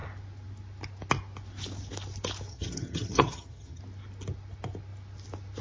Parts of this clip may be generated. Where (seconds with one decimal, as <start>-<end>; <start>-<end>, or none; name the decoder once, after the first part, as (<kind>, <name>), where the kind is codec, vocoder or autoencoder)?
2.5-3.8 (vocoder, HiFi-GAN)